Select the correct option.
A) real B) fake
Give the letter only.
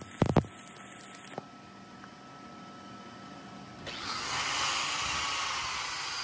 A